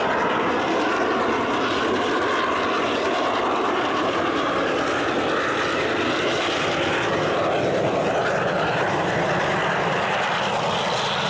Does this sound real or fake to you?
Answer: real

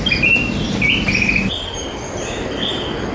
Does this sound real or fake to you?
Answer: real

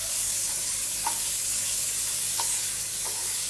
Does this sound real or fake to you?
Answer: fake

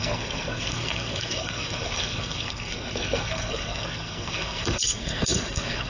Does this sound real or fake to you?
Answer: fake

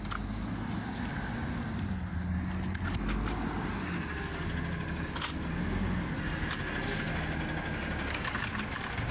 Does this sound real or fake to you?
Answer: real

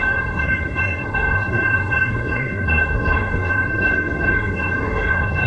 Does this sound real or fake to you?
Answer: fake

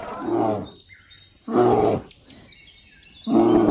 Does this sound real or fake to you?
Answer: real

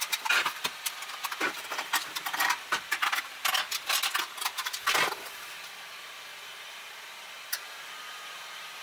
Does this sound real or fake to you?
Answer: real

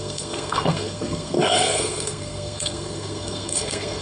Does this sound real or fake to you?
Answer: fake